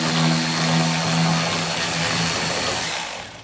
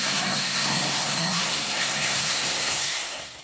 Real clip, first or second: first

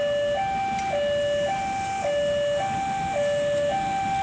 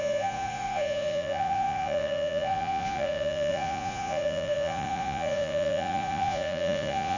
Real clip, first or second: first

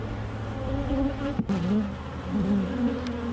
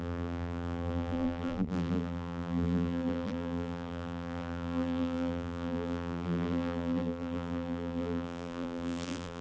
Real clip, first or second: first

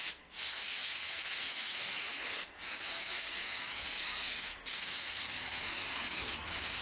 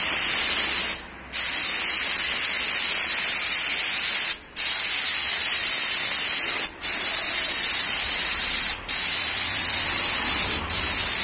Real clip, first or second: second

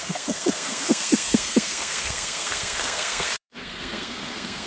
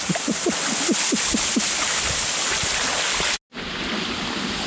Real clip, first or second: second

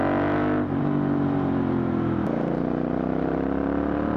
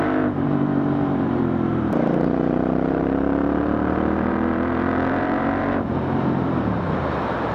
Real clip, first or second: first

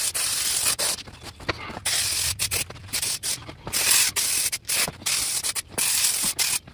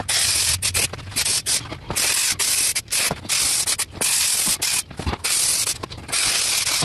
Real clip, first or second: second